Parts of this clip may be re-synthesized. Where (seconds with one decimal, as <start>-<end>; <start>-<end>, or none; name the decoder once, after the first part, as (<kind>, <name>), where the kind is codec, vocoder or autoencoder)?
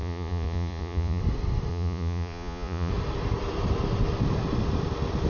0.0-1.2 (vocoder, Vocos); 1.7-2.9